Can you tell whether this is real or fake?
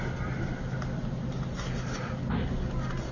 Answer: real